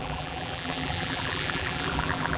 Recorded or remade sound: remade